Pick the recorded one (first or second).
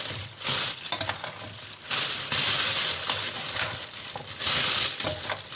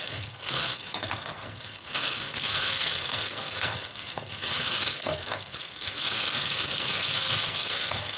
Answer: first